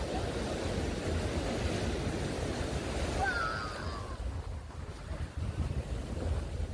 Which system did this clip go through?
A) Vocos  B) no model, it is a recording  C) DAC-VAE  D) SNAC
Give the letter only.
B